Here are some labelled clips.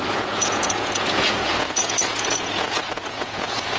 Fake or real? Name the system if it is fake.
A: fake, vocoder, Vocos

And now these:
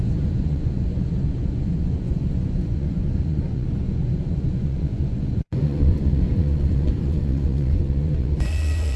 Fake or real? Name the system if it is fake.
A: fake, vocoder, Vocos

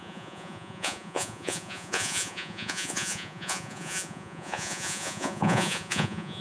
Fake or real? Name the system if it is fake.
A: fake, vocoder, Vocos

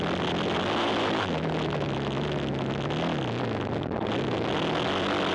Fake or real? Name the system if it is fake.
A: real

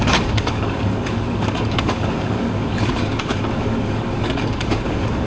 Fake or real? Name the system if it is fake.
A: fake, codec, DAC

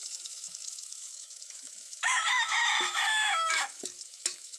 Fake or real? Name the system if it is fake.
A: fake, autoencoder, DAC-VAE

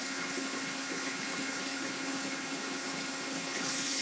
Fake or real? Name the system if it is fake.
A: fake, codec, HILCodec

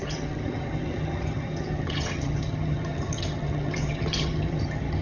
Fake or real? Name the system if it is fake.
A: fake, vocoder, HiFi-GAN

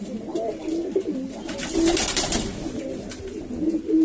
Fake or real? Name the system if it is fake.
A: real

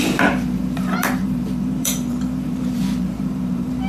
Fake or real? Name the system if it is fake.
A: fake, vocoder, BigVGAN v2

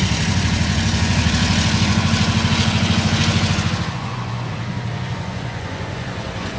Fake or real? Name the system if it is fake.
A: fake, vocoder, Vocos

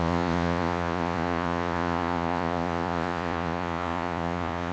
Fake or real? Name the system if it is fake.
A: fake, vocoder, Vocos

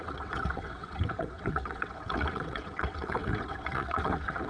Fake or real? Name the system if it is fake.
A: fake, vocoder, WaveNeXt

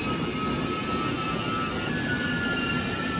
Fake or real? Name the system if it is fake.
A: real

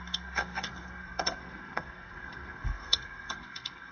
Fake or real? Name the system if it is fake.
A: fake, codec, SNAC